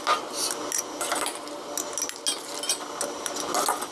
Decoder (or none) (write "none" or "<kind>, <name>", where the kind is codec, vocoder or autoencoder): none